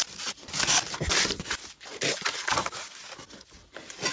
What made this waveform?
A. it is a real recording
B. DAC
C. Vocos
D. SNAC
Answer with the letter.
A